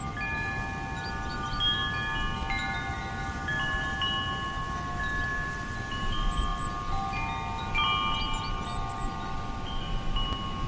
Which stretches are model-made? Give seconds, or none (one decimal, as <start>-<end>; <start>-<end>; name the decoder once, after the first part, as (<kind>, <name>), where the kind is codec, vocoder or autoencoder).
none